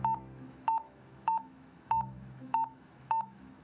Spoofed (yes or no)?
yes